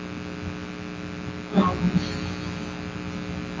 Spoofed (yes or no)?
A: no